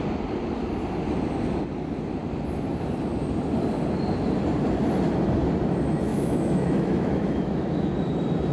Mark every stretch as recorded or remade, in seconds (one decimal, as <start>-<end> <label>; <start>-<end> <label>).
0.0-6.1 recorded; 6.1-7.9 remade; 7.9-8.5 recorded